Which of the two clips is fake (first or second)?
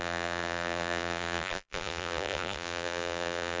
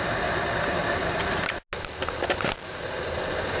first